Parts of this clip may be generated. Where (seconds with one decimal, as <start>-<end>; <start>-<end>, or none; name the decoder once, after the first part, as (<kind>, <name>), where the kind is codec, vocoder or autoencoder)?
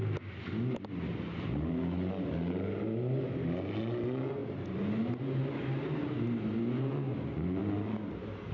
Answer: none